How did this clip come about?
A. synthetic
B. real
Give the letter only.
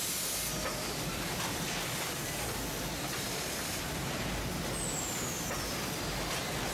B